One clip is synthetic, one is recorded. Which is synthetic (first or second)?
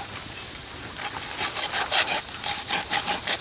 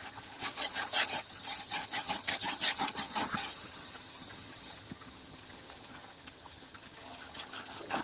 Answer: second